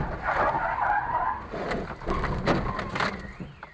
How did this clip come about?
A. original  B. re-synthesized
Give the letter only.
A